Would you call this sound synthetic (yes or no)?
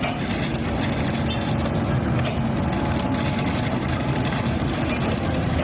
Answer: no